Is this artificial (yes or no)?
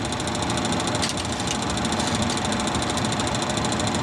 no